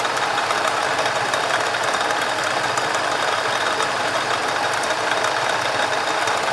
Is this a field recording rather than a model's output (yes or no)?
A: no